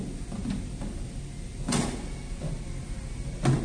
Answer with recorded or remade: recorded